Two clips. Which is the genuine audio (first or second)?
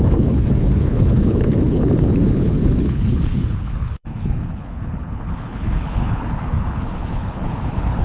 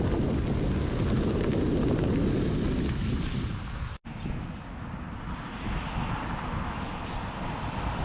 second